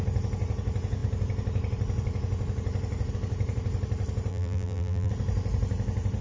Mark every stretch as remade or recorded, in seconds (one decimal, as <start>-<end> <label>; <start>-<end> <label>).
0.0-4.3 recorded; 4.3-5.1 remade; 5.1-6.2 recorded